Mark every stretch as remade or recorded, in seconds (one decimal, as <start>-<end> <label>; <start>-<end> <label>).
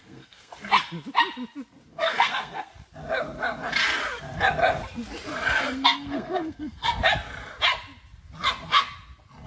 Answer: 0.0-0.5 remade; 0.5-1.9 recorded; 1.9-2.7 remade; 2.7-5.6 recorded; 5.6-7.0 remade; 7.0-9.5 recorded